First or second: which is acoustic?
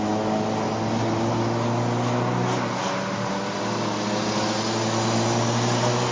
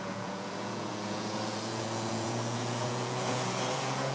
first